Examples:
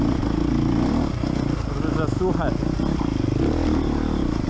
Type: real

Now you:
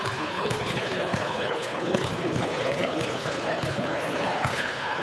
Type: fake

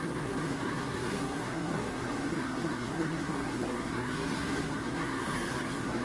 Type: fake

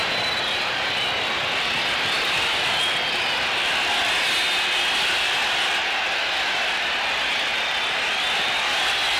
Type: real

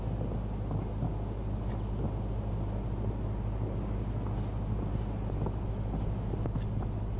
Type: real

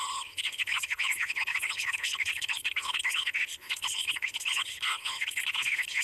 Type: fake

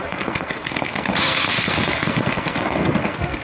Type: fake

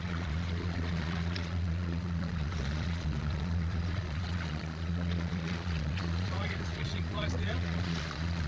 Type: fake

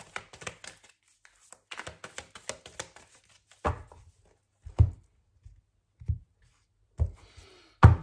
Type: real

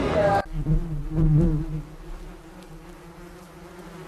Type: real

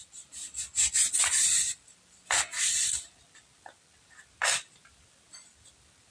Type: real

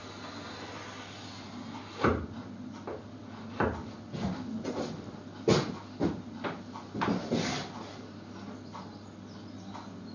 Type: real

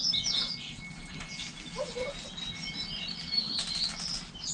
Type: real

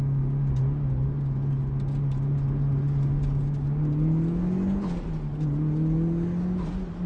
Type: real